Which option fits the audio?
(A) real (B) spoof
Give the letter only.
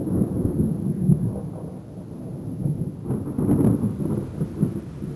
A